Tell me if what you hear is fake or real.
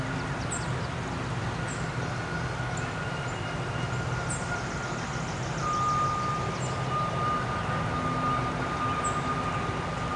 real